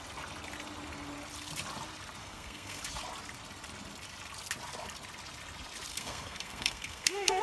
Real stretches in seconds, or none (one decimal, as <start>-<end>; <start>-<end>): 0.0-2.2; 2.8-5.9